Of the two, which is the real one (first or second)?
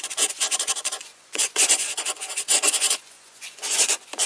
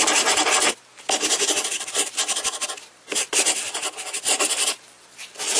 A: second